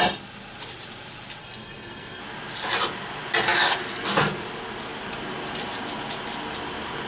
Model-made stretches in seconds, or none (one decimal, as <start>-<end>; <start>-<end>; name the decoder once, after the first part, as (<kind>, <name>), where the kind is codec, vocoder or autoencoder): 1.4-2.2 (codec, SNAC)